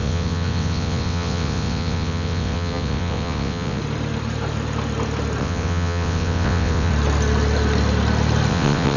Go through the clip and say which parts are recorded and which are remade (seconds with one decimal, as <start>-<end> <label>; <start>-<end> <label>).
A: 0.0-3.8 remade; 3.8-5.4 recorded; 5.4-6.9 remade; 6.9-8.5 recorded; 8.5-9.0 remade